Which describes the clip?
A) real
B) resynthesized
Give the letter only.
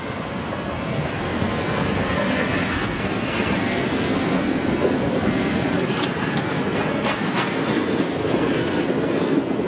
B